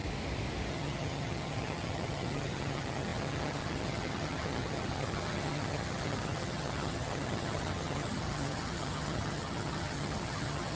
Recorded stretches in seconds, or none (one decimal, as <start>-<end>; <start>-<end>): 0.0-0.7

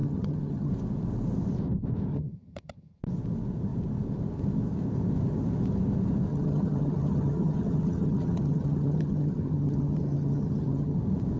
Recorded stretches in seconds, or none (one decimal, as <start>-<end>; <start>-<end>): 0.7-2.1; 3.0-6.3; 11.0-11.4

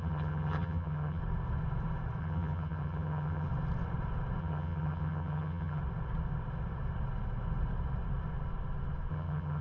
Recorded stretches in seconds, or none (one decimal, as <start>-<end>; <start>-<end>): 1.2-2.2; 3.5-4.4; 5.8-9.1

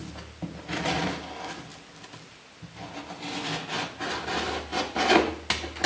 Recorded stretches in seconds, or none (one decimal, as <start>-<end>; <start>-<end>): 0.0-5.9

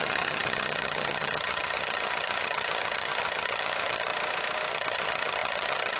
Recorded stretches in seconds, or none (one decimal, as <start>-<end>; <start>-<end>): 4.1-4.7